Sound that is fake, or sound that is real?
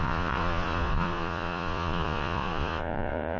fake